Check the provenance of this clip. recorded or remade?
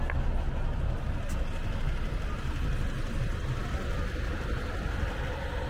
recorded